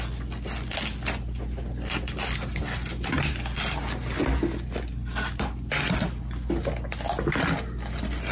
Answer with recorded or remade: recorded